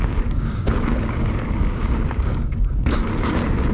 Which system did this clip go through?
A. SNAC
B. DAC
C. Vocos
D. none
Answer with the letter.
B